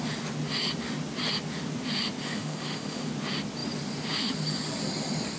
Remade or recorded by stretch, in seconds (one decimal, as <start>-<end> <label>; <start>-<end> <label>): 0.0-2.2 recorded; 2.2-3.1 remade; 3.1-5.4 recorded